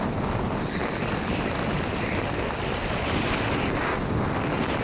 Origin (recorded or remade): recorded